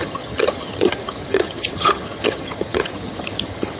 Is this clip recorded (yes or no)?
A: no